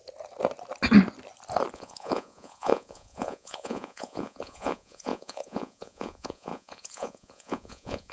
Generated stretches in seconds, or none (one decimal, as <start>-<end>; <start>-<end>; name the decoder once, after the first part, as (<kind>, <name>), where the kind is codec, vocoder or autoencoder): 1.7-8.1 (vocoder, Vocos)